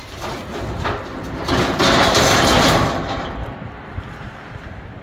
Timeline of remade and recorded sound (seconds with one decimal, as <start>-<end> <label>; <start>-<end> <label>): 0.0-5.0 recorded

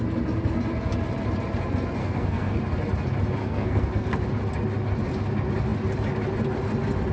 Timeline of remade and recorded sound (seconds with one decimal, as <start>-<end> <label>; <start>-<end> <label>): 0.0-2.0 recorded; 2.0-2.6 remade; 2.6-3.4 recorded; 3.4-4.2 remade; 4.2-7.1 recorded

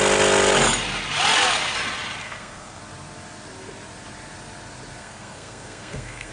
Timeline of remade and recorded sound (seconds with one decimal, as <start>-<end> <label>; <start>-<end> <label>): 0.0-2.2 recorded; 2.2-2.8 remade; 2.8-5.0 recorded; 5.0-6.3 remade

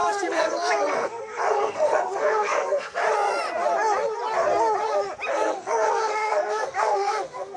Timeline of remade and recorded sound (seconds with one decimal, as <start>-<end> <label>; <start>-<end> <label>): 0.0-3.0 remade; 3.0-5.3 recorded; 5.3-7.6 remade